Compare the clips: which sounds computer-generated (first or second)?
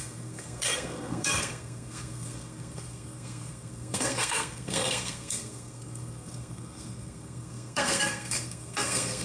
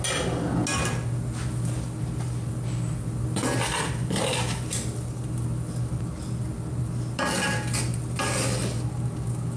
first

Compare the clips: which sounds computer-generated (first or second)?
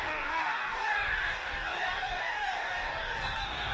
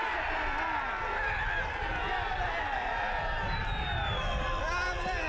first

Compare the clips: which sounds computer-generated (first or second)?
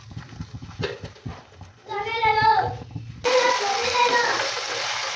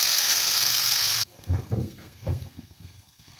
second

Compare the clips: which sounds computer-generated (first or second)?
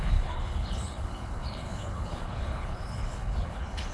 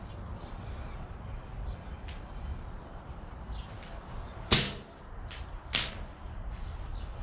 first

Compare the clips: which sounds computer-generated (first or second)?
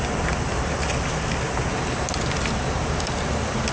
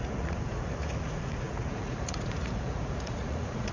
second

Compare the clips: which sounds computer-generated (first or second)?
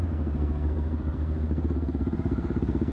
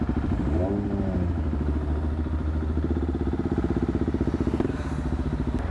first